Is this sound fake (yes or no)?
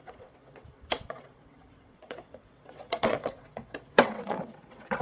yes